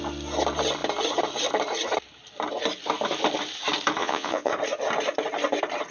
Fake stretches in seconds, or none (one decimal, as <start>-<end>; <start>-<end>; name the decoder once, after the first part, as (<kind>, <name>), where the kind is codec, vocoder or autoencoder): 4.0-4.5 (vocoder, Vocos)